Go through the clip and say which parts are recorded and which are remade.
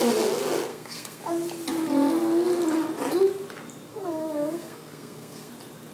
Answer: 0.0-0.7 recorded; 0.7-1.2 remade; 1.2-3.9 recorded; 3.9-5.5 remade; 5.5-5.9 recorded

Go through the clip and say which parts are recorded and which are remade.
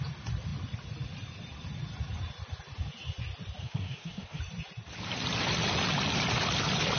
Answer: 0.0-3.6 recorded; 3.6-4.4 remade; 4.4-7.0 recorded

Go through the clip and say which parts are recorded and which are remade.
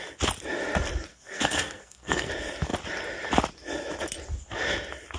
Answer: 0.0-1.1 recorded; 1.1-2.3 remade; 2.3-5.2 recorded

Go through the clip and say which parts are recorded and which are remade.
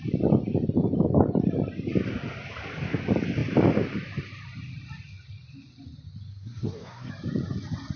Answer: 0.0-6.3 recorded; 6.3-7.1 remade; 7.1-8.0 recorded